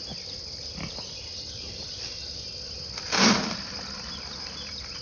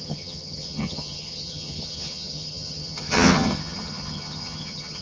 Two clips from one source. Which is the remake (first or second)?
second